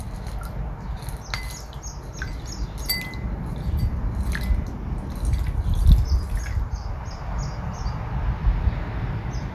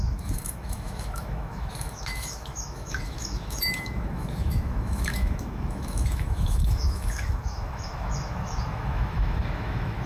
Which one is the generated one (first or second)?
second